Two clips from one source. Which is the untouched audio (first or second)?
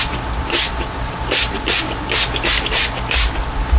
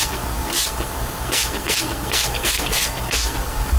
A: first